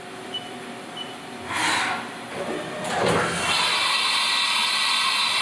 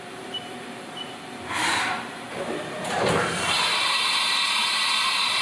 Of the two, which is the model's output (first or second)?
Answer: second